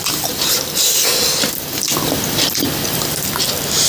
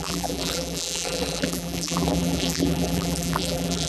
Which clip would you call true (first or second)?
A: first